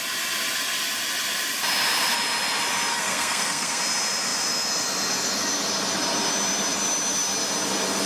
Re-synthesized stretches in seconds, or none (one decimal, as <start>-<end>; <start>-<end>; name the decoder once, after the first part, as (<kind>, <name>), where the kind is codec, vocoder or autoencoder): 2.9-3.8 (codec, SNAC)